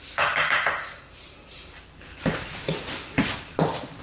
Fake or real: fake